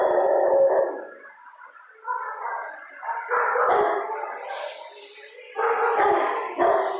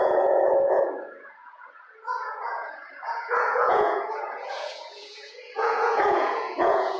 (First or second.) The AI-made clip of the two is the second